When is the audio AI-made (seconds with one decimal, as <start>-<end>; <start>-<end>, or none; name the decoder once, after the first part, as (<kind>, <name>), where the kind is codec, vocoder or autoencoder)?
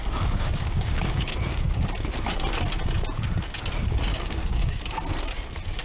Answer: 0.0-1.8 (codec, DAC); 4.1-4.8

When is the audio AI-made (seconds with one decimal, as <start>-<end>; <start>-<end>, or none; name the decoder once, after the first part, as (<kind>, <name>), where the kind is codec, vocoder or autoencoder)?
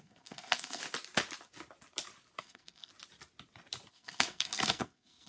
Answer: 0.0-0.8 (codec, SNAC); 2.4-2.9; 3.9-5.3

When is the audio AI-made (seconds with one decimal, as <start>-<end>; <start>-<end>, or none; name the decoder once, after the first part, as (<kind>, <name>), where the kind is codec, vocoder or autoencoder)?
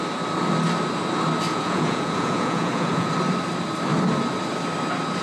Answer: 1.5-3.1 (vocoder, Vocos)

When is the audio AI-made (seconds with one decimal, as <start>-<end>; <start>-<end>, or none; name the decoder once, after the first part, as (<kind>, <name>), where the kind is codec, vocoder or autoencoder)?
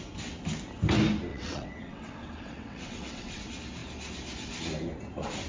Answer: 1.3-3.4 (vocoder, WaveNeXt)